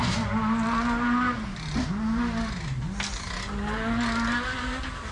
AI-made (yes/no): no